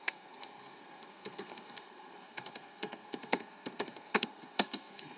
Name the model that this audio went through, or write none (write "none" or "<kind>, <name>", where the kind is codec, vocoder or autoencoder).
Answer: codec, SNAC